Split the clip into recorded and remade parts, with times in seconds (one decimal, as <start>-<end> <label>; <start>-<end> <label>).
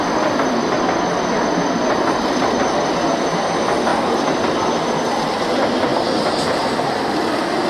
0.0-3.9 recorded; 3.9-4.4 remade; 4.4-5.9 recorded; 5.9-7.1 remade; 7.1-7.7 recorded